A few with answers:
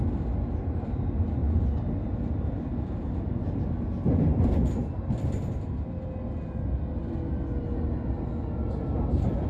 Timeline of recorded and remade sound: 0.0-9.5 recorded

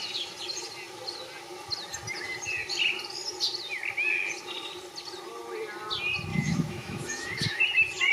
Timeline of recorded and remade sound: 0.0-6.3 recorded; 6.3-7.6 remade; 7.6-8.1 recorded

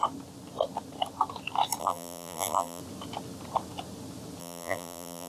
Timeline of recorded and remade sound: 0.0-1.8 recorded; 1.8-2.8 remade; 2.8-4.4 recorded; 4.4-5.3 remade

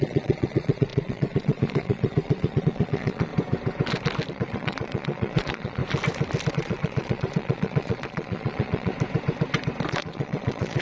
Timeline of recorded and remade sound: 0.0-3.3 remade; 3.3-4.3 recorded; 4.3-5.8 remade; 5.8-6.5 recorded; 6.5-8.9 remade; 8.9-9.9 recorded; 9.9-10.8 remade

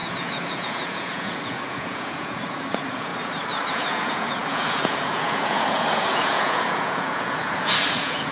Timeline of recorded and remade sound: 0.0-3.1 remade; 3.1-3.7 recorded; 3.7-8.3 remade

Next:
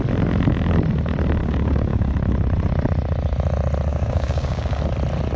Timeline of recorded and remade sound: 0.0-1.4 recorded; 1.4-2.1 remade; 2.1-3.9 recorded; 3.9-4.8 remade; 4.8-5.4 recorded

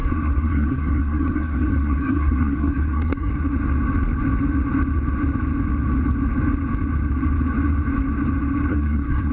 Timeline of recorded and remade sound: 0.0-3.3 remade; 3.3-8.7 recorded; 8.7-9.3 remade